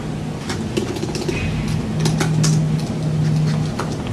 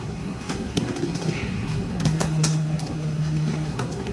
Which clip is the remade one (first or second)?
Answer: second